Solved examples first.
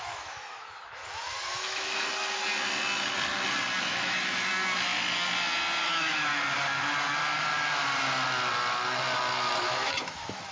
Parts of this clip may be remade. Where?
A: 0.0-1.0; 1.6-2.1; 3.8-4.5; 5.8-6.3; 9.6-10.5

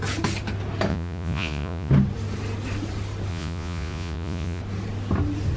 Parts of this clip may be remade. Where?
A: 0.9-1.9; 3.3-4.6

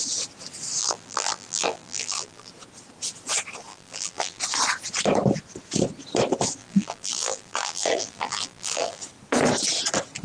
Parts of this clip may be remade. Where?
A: 0.8-2.5; 3.7-4.4; 6.6-9.0

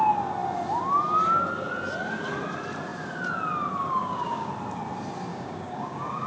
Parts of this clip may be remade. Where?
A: 4.0-4.5; 5.3-6.3

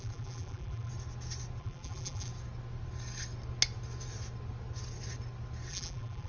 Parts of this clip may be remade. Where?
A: 0.0-0.9; 1.6-2.3; 5.7-6.3

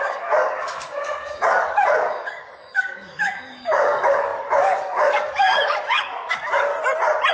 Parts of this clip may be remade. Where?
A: 0.0-6.7

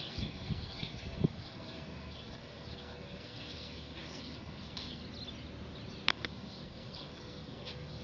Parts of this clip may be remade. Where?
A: 0.0-5.0; 6.1-8.0